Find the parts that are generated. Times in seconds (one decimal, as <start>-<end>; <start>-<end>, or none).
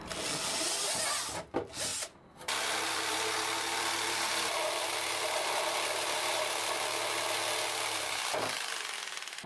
1.9-4.9